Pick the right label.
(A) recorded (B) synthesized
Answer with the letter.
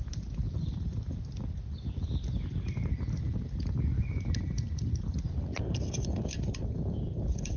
A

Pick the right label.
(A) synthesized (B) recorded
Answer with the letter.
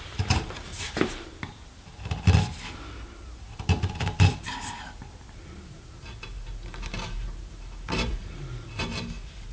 B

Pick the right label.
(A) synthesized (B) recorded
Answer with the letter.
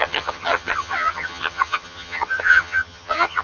A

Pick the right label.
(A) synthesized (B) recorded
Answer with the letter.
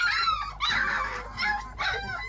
B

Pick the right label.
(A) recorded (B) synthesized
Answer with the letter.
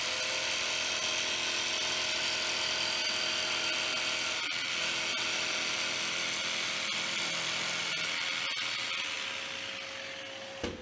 A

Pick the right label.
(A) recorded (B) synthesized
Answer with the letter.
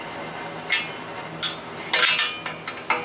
A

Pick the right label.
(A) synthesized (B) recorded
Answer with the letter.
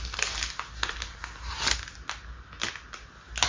B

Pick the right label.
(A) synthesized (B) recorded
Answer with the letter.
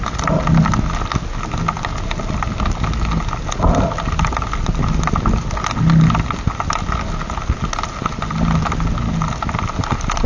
B